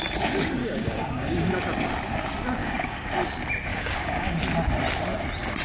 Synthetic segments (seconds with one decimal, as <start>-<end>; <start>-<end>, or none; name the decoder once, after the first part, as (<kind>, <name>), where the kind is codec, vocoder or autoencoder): 0.6-1.5 (codec, DAC); 2.6-3.1; 3.7-4.4